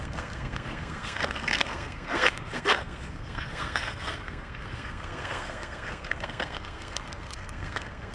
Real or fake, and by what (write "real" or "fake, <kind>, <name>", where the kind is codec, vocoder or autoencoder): fake, codec, SNAC